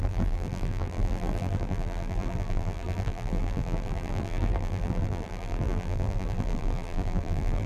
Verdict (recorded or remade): remade